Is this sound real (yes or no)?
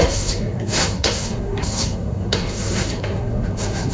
no